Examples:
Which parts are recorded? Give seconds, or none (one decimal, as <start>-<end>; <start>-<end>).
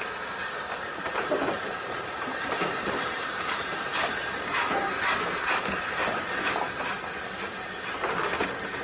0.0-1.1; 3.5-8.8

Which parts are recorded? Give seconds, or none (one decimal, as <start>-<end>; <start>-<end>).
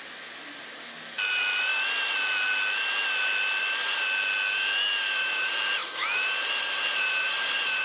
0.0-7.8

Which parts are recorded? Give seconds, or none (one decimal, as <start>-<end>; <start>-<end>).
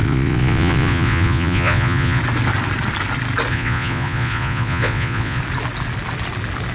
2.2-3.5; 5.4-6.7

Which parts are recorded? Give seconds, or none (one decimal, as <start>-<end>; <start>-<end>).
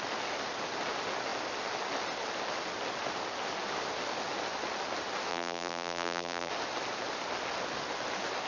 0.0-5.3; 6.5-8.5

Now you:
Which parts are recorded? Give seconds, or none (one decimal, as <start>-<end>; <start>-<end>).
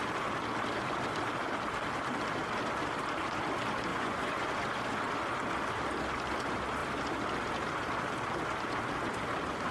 0.0-3.9; 4.5-9.7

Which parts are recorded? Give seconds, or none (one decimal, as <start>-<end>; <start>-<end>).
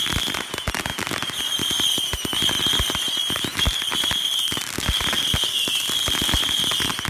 0.0-0.9; 1.4-2.3; 5.2-7.1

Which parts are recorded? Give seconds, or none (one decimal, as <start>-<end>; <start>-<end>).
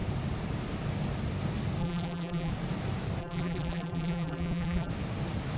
0.0-1.8; 2.5-3.2; 4.9-5.6